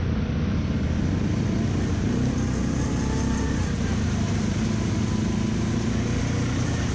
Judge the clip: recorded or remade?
recorded